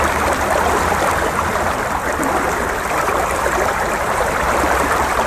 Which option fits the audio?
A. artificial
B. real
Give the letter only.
A